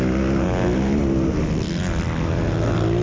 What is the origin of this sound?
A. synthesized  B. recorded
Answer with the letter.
B